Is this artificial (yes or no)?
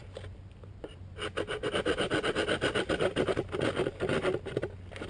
no